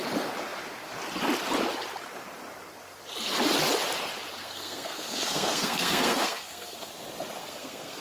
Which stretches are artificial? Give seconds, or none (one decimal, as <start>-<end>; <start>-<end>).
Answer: 4.4-6.9; 7.4-8.0

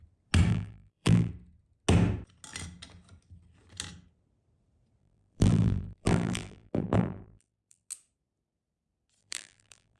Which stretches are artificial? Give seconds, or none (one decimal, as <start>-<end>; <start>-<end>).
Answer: 0.5-1.3; 5.0-7.9; 9.2-10.0